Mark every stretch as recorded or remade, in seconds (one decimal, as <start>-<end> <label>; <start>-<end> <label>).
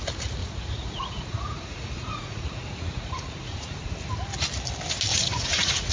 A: 0.0-0.4 recorded; 0.4-3.8 remade; 3.8-5.1 recorded; 5.1-5.9 remade